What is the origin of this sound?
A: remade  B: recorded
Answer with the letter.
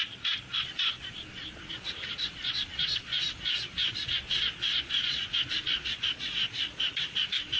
A